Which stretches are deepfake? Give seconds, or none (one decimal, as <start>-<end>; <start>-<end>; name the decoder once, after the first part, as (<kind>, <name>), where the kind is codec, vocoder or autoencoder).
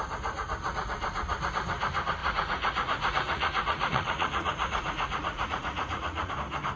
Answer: 2.2-6.3 (vocoder, Vocos)